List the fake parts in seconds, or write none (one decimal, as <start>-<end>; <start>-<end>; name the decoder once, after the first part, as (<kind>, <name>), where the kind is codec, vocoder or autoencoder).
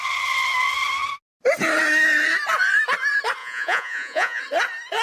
3.4-4.4 (vocoder, Vocos)